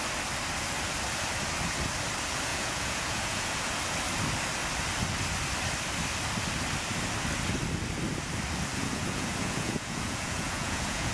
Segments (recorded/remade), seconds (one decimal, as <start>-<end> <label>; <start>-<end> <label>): 0.0-2.5 recorded; 2.5-3.8 remade; 3.8-8.7 recorded; 8.7-11.1 remade